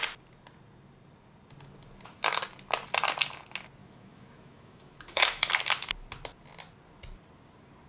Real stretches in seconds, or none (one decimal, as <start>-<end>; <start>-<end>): 0.0-3.8; 5.5-7.9